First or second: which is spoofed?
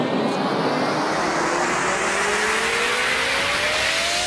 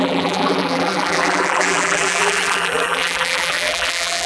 second